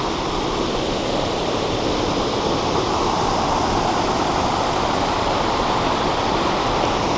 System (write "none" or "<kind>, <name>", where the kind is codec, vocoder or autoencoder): none